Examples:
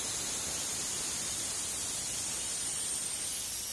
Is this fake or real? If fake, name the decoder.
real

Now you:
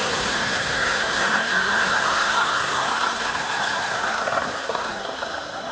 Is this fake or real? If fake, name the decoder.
fake, codec, SNAC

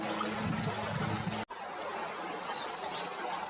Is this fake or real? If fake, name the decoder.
real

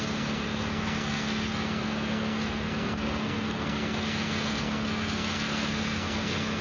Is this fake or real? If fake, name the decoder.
fake, codec, SNAC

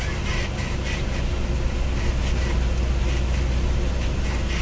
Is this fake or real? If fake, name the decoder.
real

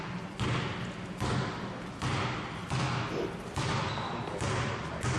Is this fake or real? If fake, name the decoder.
real